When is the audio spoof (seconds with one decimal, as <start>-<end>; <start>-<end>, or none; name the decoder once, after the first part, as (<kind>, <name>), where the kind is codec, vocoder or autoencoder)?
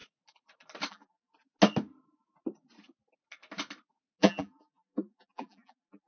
0.9-1.3 (vocoder, BigVGAN v2); 4.2-6.1